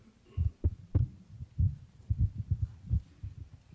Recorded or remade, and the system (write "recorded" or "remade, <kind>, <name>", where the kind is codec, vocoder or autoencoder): recorded